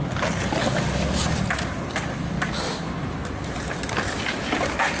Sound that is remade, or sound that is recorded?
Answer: recorded